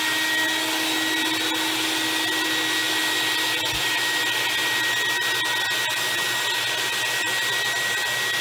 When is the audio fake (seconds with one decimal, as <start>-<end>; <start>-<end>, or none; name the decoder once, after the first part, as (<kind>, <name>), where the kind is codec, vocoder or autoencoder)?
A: none

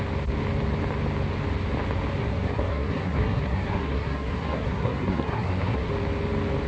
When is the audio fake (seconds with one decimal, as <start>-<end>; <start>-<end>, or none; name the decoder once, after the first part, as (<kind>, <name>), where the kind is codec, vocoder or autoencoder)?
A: 2.2-5.9 (codec, SNAC)

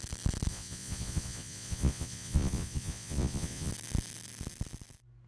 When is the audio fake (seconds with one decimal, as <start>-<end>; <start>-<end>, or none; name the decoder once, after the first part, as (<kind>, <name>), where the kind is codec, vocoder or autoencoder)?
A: 0.5-3.7 (vocoder, Vocos)

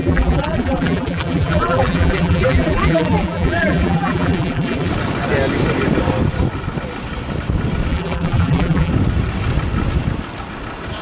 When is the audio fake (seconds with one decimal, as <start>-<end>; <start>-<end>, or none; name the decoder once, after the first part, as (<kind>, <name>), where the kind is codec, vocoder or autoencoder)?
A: 0.0-4.9 (vocoder, BigVGAN v2); 7.9-8.9

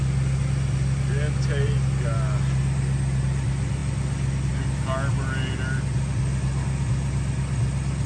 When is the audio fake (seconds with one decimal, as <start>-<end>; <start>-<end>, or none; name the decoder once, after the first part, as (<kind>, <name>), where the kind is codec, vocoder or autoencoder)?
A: none

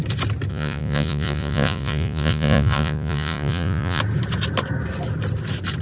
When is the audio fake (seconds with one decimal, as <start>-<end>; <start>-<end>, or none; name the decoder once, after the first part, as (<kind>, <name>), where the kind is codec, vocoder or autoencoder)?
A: 0.5-4.0 (vocoder, Vocos)

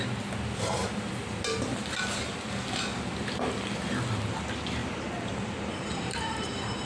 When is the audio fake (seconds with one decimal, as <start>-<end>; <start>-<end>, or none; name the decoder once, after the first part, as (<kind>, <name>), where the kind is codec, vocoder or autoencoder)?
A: 4.8-6.8 (vocoder, BigVGAN v2)

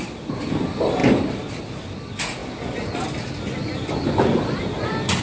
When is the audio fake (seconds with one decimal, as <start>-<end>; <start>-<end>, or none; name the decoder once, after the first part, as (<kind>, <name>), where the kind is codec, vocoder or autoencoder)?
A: 0.0-2.4 (vocoder, BigVGAN v2); 4.8-5.2